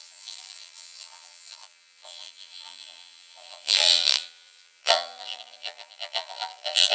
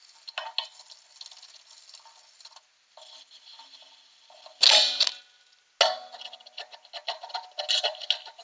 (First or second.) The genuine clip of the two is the second